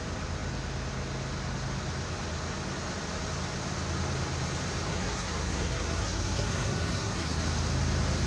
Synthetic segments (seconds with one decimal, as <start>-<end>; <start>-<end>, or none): 4.9-7.4